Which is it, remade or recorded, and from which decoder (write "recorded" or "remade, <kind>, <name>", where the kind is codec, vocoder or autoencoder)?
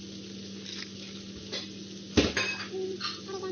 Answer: recorded